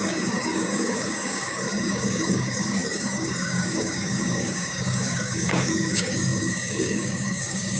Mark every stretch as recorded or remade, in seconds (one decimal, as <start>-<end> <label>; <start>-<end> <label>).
0.0-7.8 remade